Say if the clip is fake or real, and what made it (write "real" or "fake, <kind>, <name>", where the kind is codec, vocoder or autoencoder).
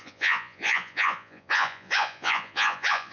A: fake, vocoder, Vocos